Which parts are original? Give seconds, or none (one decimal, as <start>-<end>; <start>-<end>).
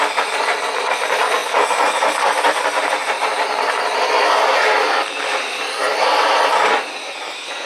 1.4-2.1